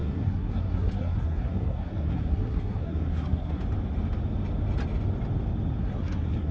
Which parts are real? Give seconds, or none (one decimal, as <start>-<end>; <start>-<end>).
3.6-5.8